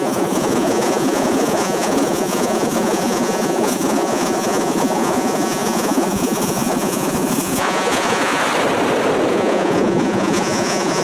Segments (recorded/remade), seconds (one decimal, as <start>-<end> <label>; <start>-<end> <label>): 0.0-8.4 remade; 8.4-9.3 recorded; 9.3-11.0 remade